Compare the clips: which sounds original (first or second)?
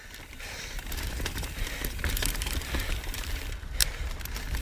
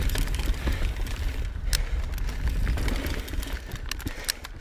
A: second